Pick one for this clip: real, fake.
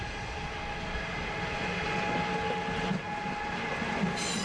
real